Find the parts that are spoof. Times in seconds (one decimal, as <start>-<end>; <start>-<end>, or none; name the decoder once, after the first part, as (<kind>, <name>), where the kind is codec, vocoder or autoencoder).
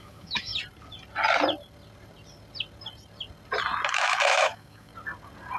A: 0.0-0.5 (autoencoder, DAC-VAE); 3.9-4.9